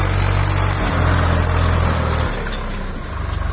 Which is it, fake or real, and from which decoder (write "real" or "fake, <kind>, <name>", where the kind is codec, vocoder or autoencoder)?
real